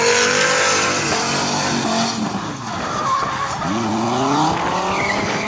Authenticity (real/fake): real